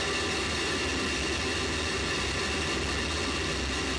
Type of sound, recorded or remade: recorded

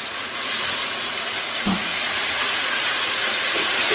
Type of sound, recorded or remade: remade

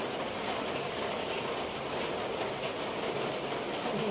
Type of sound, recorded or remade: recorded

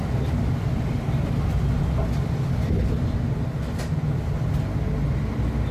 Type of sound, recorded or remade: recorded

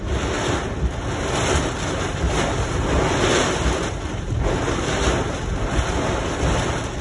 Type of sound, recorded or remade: recorded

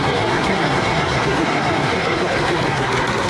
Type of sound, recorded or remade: remade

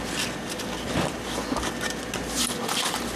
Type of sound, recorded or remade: recorded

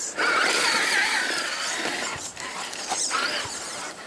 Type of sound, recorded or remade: remade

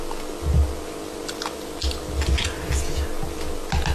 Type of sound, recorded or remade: recorded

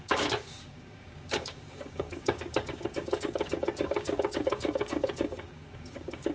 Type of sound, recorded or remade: remade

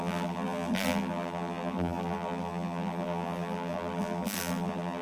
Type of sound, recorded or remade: remade